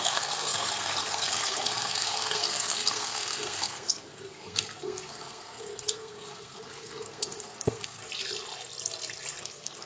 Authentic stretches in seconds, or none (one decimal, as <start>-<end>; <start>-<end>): 8.0-9.4